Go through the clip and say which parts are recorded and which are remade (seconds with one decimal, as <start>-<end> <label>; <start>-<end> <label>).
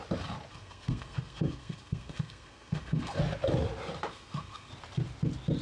0.0-0.5 recorded; 0.5-3.2 remade; 3.2-4.1 recorded; 4.1-4.7 remade; 4.7-5.6 recorded